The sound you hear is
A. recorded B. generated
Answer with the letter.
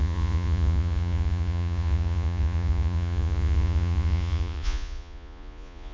B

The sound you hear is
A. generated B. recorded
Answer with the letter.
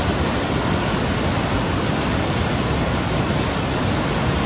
B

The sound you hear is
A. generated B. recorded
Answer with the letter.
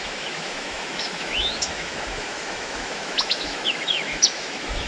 A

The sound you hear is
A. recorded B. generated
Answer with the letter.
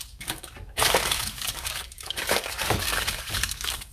B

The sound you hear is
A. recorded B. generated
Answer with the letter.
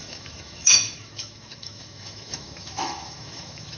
B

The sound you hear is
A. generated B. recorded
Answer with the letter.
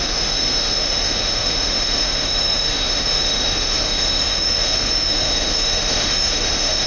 A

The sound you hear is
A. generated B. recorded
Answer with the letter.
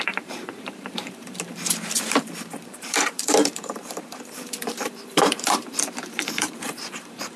A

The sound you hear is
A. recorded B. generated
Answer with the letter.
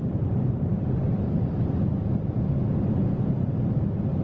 A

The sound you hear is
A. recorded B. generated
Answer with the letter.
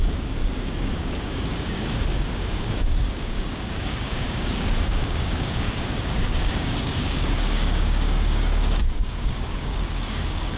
B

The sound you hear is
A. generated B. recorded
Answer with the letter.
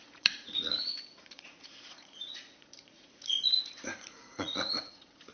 A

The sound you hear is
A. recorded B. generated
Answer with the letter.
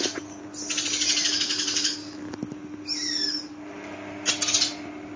A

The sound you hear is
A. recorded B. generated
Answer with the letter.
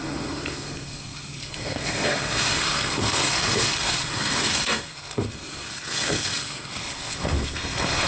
B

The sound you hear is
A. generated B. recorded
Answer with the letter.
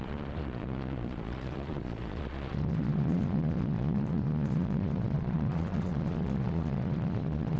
A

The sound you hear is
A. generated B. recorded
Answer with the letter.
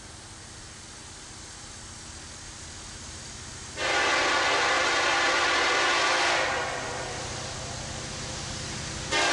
B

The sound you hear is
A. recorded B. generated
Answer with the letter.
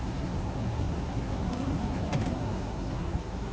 B